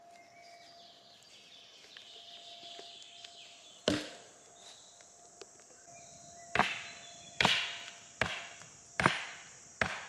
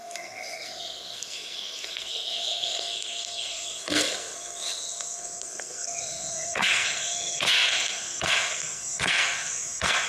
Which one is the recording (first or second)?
first